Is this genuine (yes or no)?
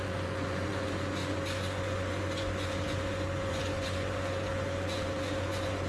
no